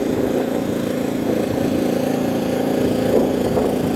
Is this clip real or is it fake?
real